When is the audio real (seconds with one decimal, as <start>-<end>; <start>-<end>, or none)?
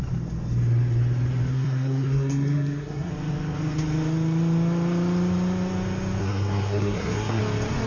0.0-1.5; 3.1-6.2; 7.4-7.9